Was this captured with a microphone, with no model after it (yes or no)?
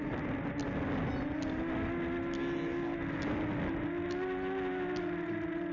yes